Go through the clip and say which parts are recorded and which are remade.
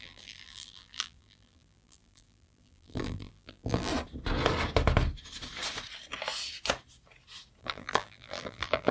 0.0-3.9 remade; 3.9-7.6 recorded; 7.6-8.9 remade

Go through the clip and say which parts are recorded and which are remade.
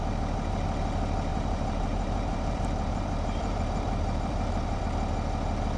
0.0-1.3 recorded; 1.3-4.8 remade; 4.8-5.8 recorded